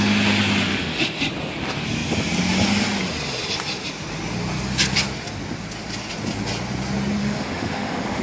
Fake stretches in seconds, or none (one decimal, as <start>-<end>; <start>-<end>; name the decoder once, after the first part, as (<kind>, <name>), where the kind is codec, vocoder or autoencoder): 0.7-1.2 (autoencoder, DAC-VAE); 7.2-8.2